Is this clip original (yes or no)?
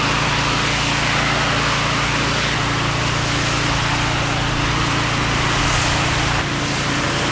yes